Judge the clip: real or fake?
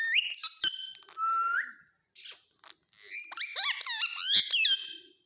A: real